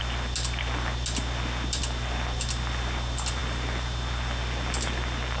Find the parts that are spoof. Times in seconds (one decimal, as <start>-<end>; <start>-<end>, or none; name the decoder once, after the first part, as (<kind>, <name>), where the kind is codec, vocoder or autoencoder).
none